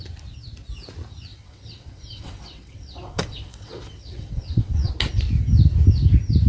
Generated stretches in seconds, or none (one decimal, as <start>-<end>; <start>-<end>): 1.3-4.9